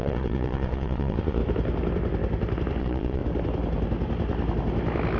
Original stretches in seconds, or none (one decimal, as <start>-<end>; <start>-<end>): 1.4-2.8; 3.2-5.2

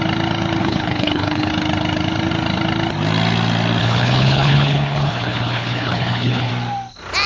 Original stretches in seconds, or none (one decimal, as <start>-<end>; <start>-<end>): 0.0-0.6; 1.5-3.8; 6.5-7.3

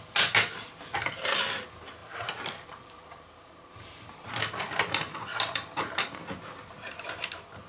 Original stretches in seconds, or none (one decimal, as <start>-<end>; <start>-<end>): 0.0-2.0; 4.3-7.7

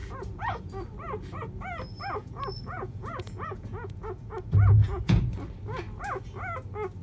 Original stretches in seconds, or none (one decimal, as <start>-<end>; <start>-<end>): 0.7-2.2; 5.2-7.0